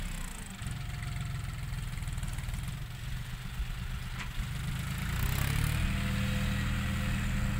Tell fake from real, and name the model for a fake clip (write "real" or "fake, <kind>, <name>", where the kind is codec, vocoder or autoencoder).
real